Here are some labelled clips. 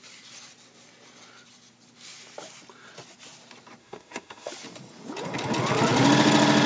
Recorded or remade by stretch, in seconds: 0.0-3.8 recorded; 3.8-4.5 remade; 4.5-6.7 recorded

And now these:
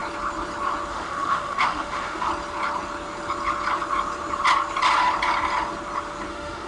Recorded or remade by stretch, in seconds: 0.0-0.9 recorded; 0.9-2.3 remade; 2.3-6.3 recorded; 6.3-6.7 remade

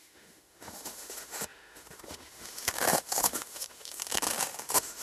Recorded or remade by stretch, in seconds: 0.0-5.0 remade

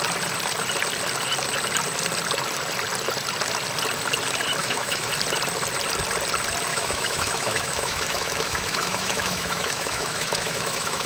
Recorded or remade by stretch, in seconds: 0.0-4.6 recorded; 4.6-5.1 remade; 5.1-6.7 recorded; 6.7-11.1 remade

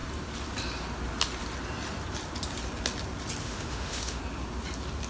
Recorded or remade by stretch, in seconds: 0.0-3.4 recorded; 3.4-4.2 remade; 4.2-5.1 recorded

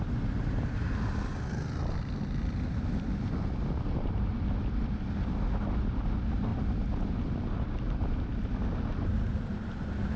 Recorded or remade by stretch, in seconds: 0.0-10.2 recorded

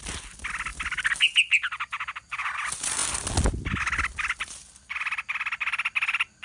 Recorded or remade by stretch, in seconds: 0.0-6.4 recorded

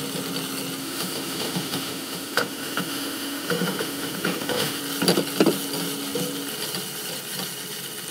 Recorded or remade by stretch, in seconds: 0.0-0.8 recorded; 0.8-4.8 remade; 4.8-8.1 recorded